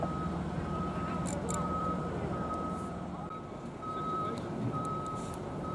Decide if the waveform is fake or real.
fake